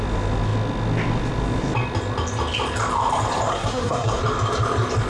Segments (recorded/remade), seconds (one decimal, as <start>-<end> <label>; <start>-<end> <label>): 0.0-3.5 recorded; 3.5-4.2 remade; 4.2-5.1 recorded

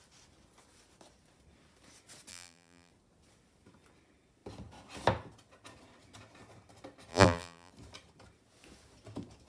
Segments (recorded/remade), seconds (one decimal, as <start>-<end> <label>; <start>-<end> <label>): 0.0-2.3 recorded; 2.3-2.9 remade; 2.9-7.1 recorded; 7.1-7.7 remade; 7.7-9.5 recorded